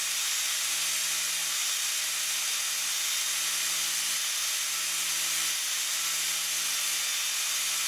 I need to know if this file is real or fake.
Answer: real